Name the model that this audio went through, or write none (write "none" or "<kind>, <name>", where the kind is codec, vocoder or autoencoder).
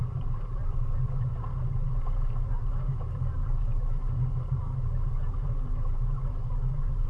vocoder, BigVGAN v2